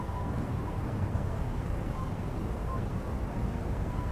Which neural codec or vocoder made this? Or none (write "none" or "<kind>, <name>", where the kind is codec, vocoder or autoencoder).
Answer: codec, SNAC